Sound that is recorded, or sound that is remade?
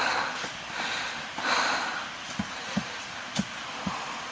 recorded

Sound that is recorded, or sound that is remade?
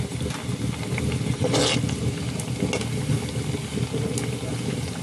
recorded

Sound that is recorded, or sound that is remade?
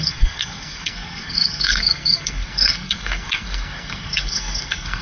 remade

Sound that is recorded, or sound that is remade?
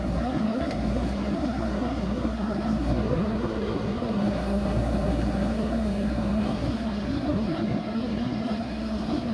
remade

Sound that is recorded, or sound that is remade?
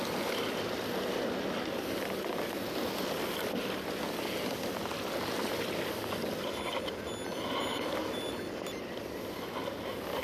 recorded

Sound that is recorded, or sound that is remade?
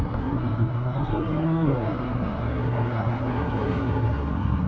remade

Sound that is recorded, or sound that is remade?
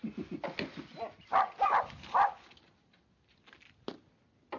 recorded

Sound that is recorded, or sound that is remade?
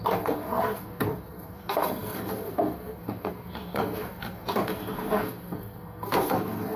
remade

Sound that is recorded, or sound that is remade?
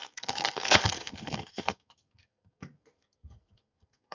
remade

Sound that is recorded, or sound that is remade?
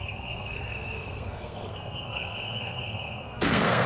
remade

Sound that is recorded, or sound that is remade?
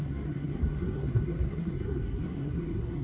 remade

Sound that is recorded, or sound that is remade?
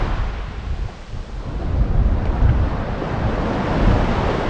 recorded